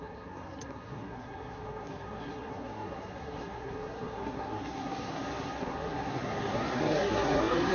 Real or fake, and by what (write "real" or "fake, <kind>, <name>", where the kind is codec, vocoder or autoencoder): fake, codec, SNAC